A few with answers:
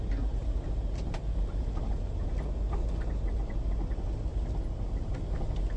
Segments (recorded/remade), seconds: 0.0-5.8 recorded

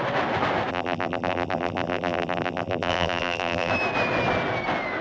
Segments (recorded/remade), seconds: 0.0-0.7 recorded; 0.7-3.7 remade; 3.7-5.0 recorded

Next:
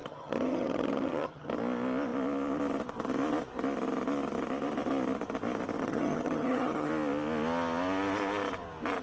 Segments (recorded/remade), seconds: 0.0-1.5 remade; 1.5-5.8 recorded; 5.8-6.9 remade; 6.9-9.0 recorded

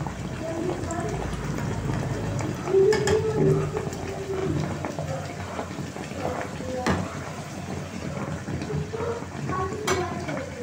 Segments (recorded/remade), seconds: 0.0-10.6 recorded

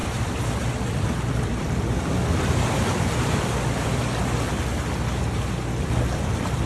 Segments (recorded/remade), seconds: 0.0-4.0 remade; 4.0-5.8 recorded; 5.8-6.7 remade

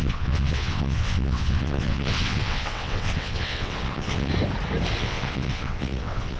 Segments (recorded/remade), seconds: 0.0-4.3 remade; 4.3-5.0 recorded; 5.0-6.4 remade

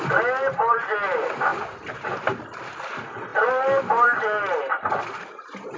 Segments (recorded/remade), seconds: 0.0-5.8 recorded

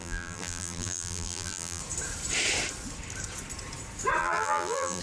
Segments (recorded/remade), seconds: 0.0-1.8 remade; 1.8-4.2 recorded; 4.2-5.0 remade